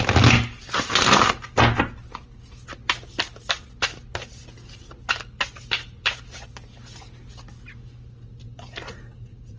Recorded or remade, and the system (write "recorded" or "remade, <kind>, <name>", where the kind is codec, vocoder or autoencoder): recorded